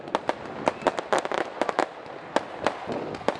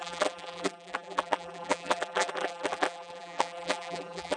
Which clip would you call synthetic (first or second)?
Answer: second